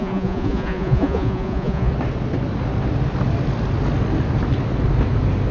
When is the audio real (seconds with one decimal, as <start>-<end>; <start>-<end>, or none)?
1.9-5.5